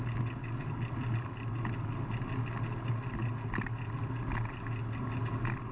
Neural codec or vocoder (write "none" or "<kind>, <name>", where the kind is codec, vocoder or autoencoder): none